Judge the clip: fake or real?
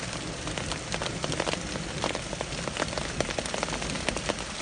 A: real